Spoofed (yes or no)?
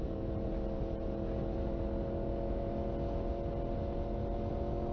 no